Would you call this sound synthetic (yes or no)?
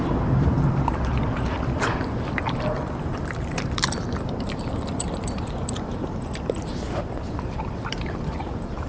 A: yes